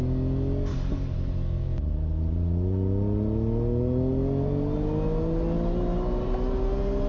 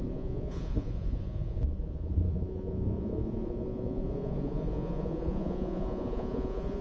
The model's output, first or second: second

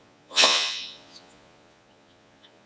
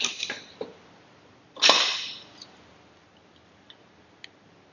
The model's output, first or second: first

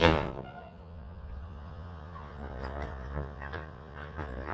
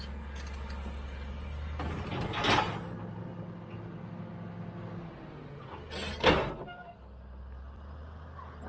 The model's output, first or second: first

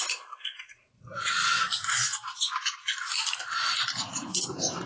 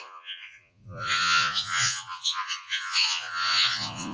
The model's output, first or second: second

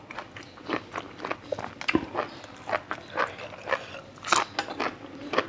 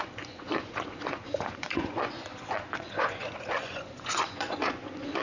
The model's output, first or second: second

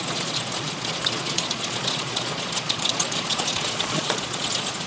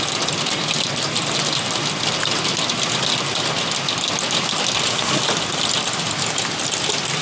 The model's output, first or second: first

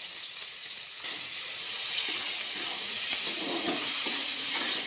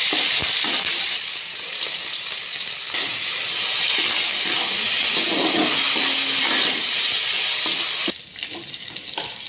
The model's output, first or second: first